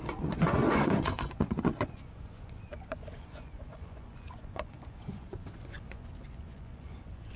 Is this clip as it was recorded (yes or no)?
no